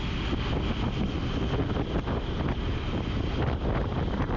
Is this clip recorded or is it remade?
recorded